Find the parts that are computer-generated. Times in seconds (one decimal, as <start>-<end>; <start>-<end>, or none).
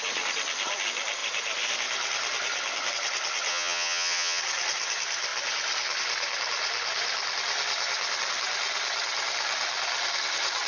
3.5-4.4